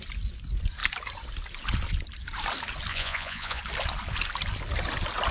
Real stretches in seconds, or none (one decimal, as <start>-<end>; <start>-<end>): 0.0-2.9; 3.6-5.3